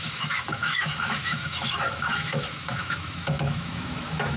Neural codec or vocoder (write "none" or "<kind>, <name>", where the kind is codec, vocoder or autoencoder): autoencoder, DAC-VAE